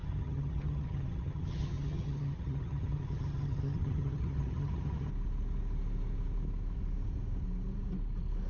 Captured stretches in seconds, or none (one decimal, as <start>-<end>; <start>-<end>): 5.1-8.5